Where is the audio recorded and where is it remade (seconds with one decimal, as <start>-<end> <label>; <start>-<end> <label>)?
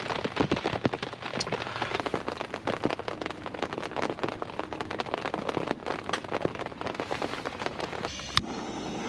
0.0-5.8 recorded; 5.8-8.1 remade; 8.1-9.1 recorded